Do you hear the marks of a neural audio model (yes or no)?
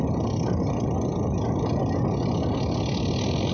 no